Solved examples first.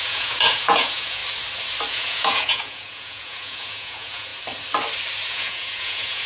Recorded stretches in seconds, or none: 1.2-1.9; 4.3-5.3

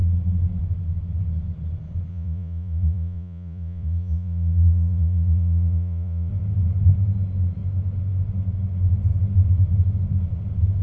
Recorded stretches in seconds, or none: 0.0-2.1; 6.3-10.8

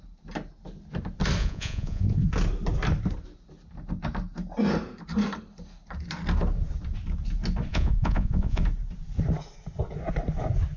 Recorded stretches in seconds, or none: 0.0-1.4; 2.3-7.7; 8.6-10.8

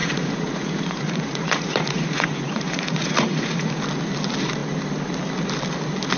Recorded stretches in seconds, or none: 3.7-6.2

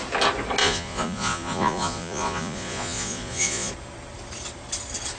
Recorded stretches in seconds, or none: 0.0-0.6; 3.7-5.2

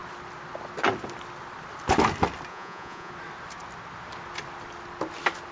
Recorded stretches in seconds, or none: 0.0-2.5; 3.1-5.5